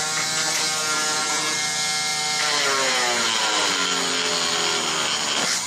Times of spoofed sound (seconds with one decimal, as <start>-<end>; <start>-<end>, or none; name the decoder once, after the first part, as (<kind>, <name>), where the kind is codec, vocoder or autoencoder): none